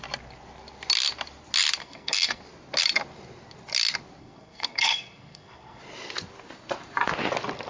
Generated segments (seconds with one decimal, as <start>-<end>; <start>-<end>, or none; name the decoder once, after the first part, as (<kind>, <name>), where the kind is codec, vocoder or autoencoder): 1.8-2.4 (codec, SNAC); 4.2-5.8